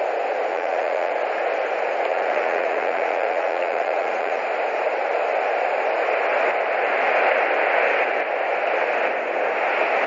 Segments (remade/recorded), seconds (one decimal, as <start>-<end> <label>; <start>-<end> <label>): 0.0-0.5 recorded; 0.5-1.1 remade; 1.1-2.1 recorded; 2.1-4.4 remade; 4.4-10.1 recorded